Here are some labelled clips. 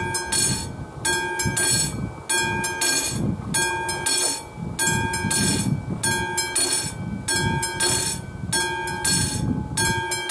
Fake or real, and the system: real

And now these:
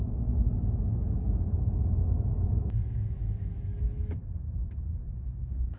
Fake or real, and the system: fake, autoencoder, DAC-VAE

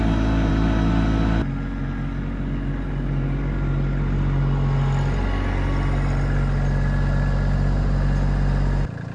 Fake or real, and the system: real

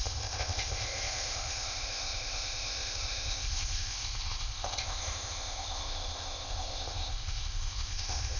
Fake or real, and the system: fake, codec, ZipCodec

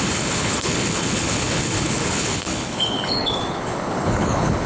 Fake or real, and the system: fake, codec, HILCodec